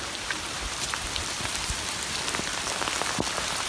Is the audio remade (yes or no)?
yes